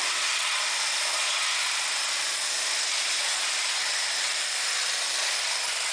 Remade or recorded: recorded